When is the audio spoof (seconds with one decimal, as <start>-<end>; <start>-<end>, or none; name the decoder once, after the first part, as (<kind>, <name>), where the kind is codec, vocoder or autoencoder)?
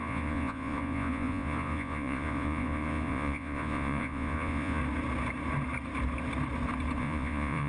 0.0-4.8 (vocoder, Vocos); 7.0-7.7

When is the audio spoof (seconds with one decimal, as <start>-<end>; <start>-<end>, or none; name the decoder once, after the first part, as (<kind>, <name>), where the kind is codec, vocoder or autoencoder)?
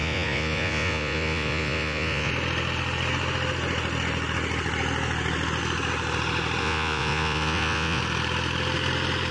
0.0-2.3 (vocoder, Vocos); 6.6-8.0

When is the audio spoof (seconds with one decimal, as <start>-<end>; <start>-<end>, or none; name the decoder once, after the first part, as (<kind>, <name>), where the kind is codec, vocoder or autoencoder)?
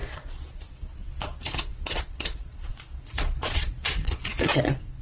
0.0-5.0 (vocoder, Vocos)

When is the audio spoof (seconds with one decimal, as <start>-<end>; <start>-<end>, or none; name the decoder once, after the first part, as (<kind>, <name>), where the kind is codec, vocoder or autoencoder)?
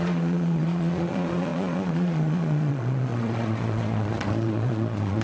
0.0-5.2 (vocoder, Vocos)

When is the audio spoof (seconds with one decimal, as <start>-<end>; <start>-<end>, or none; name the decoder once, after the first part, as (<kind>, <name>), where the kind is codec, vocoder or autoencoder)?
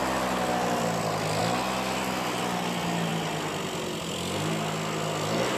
none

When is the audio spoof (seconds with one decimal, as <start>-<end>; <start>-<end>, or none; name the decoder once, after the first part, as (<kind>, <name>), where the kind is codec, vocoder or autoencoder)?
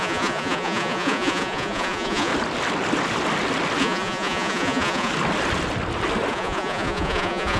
0.0-2.3 (vocoder, Vocos); 3.8-5.1; 6.3-7.6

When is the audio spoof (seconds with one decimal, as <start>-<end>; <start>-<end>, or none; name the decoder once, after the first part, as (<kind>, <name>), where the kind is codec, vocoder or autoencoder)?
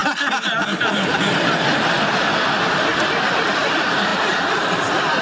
none